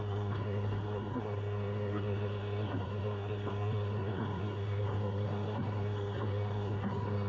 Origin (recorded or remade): remade